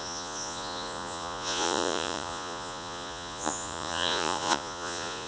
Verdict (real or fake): fake